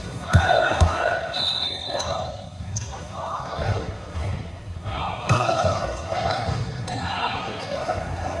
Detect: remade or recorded remade